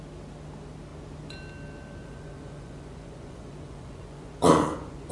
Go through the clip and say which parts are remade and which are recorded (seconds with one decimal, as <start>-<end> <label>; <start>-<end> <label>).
0.0-2.0 recorded; 2.0-5.1 remade